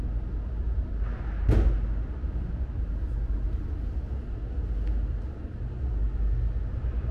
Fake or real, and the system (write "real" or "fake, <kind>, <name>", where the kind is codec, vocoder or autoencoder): real